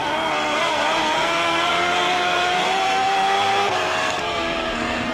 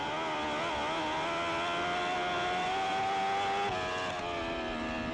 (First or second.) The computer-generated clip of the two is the first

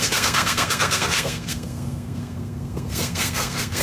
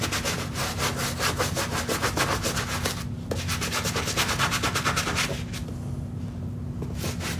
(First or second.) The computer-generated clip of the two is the first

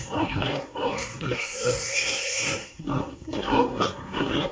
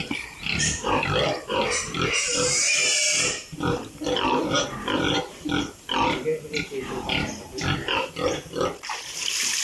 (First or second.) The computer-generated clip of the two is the first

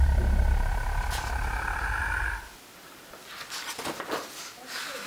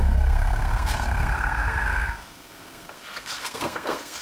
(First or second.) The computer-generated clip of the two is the second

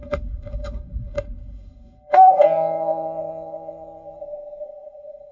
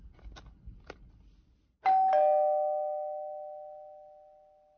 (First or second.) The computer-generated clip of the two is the first